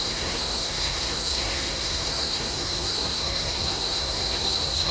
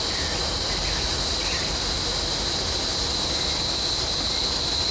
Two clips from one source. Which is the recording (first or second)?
second